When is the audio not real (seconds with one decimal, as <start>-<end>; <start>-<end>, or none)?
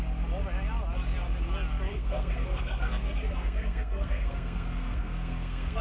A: 1.9-5.8